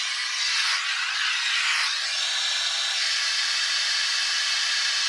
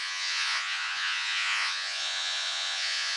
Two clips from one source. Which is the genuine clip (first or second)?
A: first